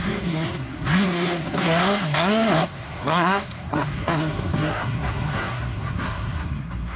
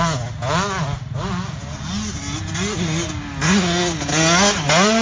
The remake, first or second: first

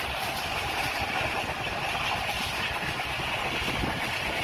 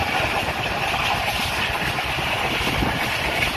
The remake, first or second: second